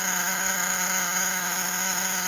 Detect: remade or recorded remade